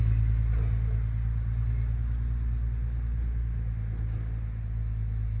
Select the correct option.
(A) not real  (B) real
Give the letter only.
B